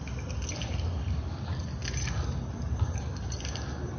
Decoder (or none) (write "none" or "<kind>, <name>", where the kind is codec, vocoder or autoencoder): none